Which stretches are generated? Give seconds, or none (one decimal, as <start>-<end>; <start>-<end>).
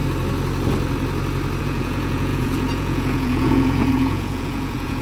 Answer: 1.6-5.0